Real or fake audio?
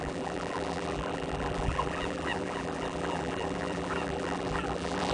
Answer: fake